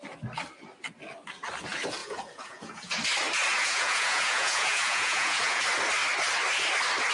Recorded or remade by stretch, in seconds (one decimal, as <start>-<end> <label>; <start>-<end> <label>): 0.0-2.0 recorded; 2.0-3.0 remade; 3.0-3.5 recorded; 3.5-5.6 remade; 5.6-7.1 recorded

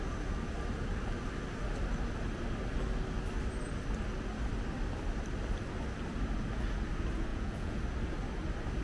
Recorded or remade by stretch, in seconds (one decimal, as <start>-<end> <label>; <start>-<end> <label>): 0.0-7.3 recorded; 7.3-7.8 remade; 7.8-8.8 recorded

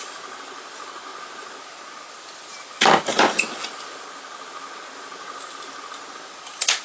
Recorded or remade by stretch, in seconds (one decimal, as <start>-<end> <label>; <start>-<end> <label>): 0.0-6.8 recorded

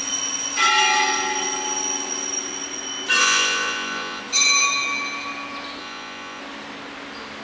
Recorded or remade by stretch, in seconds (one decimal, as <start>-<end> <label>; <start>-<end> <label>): 0.0-3.2 recorded; 3.2-4.2 remade; 4.2-5.8 recorded; 5.8-6.4 remade; 6.4-7.4 recorded

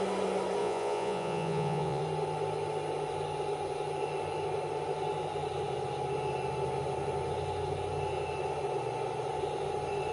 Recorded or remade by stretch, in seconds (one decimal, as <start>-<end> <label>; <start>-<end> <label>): 0.0-0.6 recorded; 0.6-2.0 remade; 2.0-10.1 recorded

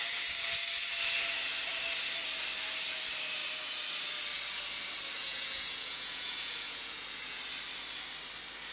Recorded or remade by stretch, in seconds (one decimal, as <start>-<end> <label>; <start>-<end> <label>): 0.0-5.2 recorded; 5.2-7.4 remade; 7.4-8.7 recorded

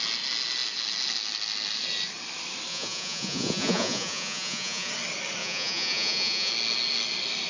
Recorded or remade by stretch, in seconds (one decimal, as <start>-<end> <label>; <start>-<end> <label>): 0.0-2.7 recorded; 2.7-4.9 remade; 4.9-5.4 recorded; 5.4-6.5 remade; 6.5-7.5 recorded

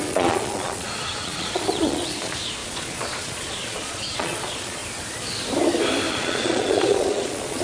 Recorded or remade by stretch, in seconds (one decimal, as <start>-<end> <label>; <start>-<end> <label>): 0.0-4.8 remade; 4.8-6.1 recorded; 6.1-7.6 remade